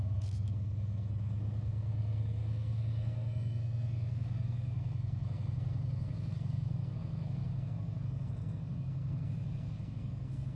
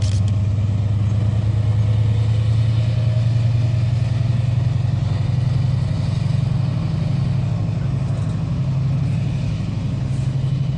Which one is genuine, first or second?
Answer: second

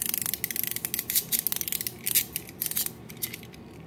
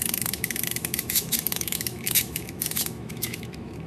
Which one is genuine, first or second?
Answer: first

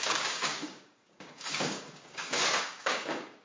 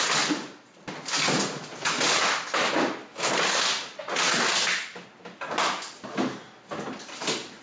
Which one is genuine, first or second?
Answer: second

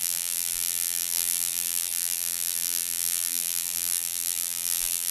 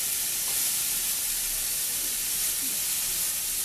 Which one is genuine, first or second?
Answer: second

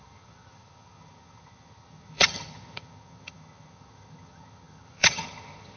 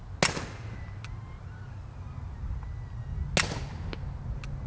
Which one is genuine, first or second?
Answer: second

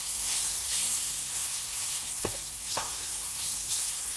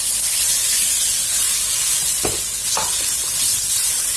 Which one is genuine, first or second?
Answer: second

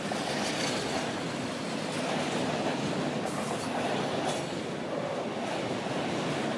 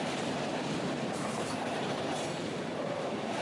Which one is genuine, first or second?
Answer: first